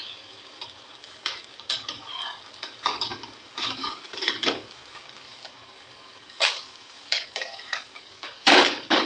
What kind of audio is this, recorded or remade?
remade